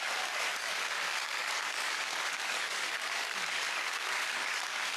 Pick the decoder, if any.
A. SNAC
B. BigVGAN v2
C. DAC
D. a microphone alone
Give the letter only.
C